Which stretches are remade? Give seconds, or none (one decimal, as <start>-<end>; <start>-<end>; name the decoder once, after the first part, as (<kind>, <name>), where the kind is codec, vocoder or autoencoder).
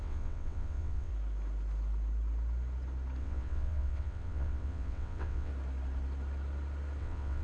0.0-1.1 (vocoder, WaveNeXt); 3.2-5.5; 7.0-7.4